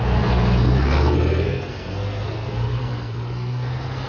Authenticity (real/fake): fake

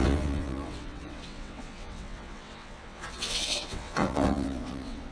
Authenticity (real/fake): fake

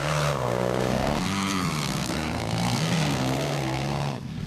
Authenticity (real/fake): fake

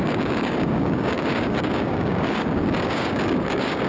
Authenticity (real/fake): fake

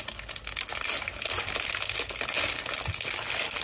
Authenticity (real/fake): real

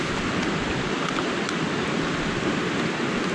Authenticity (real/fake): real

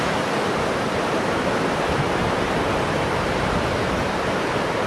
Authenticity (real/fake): real